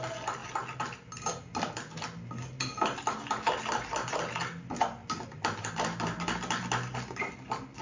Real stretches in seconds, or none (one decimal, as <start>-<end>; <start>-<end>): 0.0-7.8